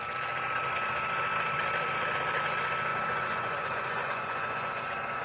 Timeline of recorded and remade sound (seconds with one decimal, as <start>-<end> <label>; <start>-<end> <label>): 0.0-2.9 recorded; 2.9-5.2 remade